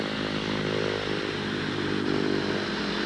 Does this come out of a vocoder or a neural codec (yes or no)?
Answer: no